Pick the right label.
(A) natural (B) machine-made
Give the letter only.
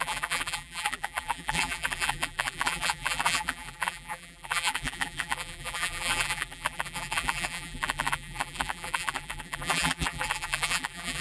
B